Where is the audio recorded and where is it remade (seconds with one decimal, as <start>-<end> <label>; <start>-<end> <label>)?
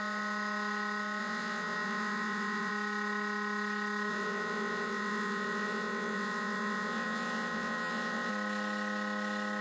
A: 0.0-1.2 recorded; 1.2-2.7 remade; 2.7-4.1 recorded; 4.1-8.3 remade; 8.3-9.6 recorded